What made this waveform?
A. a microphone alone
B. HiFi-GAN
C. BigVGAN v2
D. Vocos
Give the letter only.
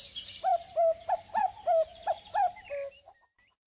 C